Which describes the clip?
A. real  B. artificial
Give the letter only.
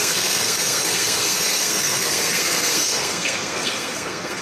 B